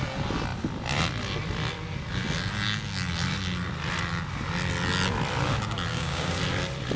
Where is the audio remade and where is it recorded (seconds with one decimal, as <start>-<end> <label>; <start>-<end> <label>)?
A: 0.0-5.9 recorded; 5.9-6.4 remade; 6.4-7.0 recorded